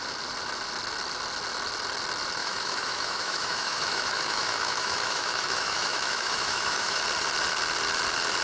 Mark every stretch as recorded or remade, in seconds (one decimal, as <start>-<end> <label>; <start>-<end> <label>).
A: 0.0-2.4 recorded; 2.4-7.0 remade; 7.0-8.4 recorded